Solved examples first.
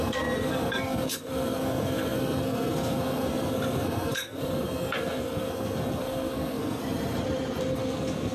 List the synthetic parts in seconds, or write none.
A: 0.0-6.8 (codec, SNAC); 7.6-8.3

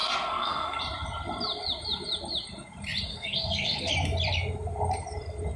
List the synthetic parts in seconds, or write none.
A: 0.0-0.8 (codec, SNAC); 3.1-3.9